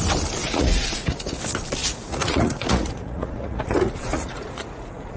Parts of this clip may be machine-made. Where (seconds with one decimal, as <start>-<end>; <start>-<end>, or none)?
0.4-1.4; 1.8-5.2